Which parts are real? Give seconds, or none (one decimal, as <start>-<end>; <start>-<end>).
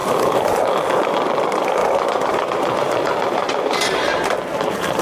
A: 0.7-1.8